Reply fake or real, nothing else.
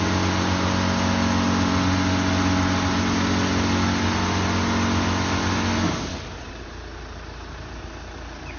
real